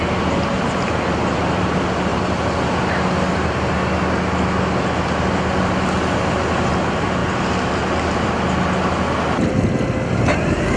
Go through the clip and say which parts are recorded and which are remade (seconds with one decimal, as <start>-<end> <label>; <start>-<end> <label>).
0.0-10.8 recorded